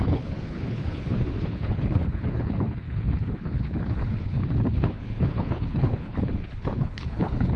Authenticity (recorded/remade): remade